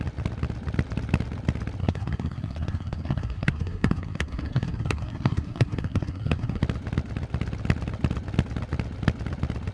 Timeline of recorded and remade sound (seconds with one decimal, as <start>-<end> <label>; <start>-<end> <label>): 0.0-1.8 recorded; 1.8-6.6 remade; 6.6-9.7 recorded

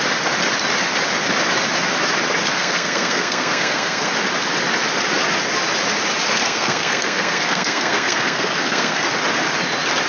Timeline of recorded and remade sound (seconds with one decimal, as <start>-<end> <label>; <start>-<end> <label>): 0.0-2.5 recorded; 2.5-4.1 remade; 4.1-6.4 recorded; 6.4-9.1 remade; 9.1-10.1 recorded

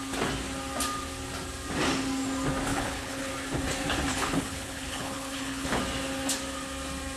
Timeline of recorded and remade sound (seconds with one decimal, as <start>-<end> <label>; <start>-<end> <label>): 0.0-2.7 recorded; 2.7-3.3 remade; 3.3-4.1 recorded; 4.1-5.8 remade; 5.8-7.2 recorded

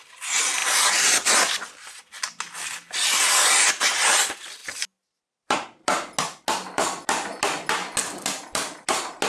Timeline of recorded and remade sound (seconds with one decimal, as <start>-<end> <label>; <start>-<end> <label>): 0.0-9.3 recorded